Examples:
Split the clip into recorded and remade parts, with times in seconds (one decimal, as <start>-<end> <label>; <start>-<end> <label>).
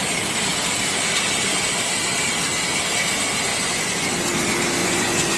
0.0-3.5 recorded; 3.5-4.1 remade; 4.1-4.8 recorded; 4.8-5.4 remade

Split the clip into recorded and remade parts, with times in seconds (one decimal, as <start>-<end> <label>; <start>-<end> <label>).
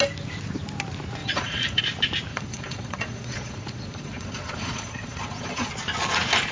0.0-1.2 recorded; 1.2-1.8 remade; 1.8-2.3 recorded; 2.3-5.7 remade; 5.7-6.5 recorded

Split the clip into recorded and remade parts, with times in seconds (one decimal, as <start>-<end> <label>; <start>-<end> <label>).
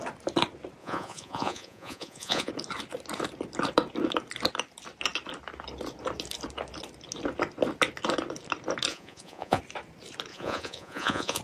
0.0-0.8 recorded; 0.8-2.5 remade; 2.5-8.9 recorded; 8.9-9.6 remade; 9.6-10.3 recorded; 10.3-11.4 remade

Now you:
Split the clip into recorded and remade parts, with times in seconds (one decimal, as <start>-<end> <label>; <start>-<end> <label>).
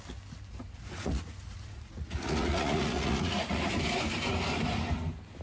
0.0-0.5 recorded; 0.5-3.7 remade; 3.7-5.4 recorded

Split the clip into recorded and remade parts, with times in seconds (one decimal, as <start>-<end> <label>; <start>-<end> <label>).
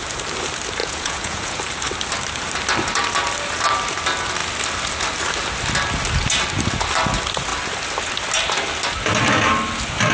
0.0-0.8 recorded; 0.8-1.6 remade; 1.6-10.1 recorded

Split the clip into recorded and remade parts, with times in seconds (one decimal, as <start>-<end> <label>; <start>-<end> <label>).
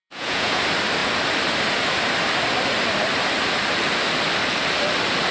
0.0-0.6 remade; 0.6-5.3 recorded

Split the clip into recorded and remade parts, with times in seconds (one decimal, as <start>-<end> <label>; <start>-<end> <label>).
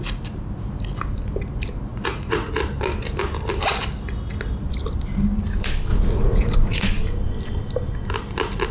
0.0-1.9 recorded; 1.9-2.5 remade; 2.5-5.9 recorded; 5.9-6.8 remade; 6.8-8.7 recorded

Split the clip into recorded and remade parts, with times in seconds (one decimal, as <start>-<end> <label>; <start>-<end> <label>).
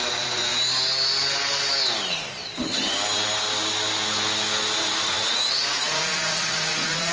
0.0-0.5 remade; 0.5-4.8 recorded; 4.8-7.1 remade